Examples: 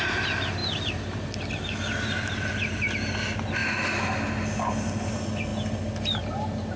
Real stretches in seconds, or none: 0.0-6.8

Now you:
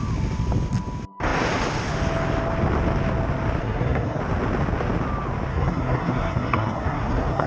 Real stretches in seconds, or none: 0.0-3.6; 4.2-5.5

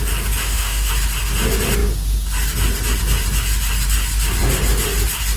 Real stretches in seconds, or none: 0.0-0.4; 0.9-5.4

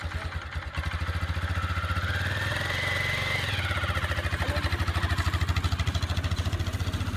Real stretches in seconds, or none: 0.0-7.2

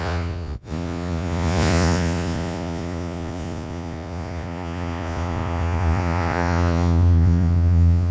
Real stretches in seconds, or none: none

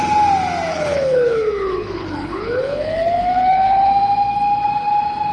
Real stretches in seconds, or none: 0.0-0.7; 3.9-5.3

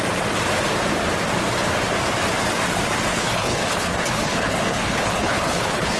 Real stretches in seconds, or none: 0.0-3.1